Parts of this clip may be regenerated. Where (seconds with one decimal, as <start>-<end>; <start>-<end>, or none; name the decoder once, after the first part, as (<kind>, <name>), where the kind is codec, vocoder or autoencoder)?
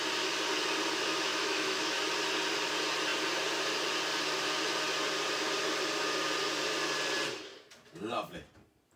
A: 1.3-2.1 (autoencoder, DAC-VAE)